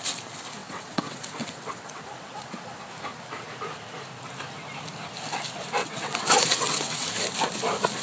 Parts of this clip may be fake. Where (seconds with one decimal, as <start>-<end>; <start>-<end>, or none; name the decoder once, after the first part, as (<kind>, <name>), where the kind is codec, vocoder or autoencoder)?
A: 0.6-2.5 (vocoder, WaveNeXt); 5.8-7.1